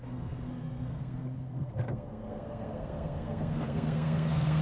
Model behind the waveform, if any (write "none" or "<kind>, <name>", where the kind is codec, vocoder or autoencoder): codec, SNAC